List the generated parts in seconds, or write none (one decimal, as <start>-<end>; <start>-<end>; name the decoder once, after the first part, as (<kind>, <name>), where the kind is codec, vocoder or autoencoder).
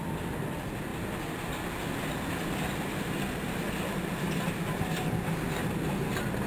none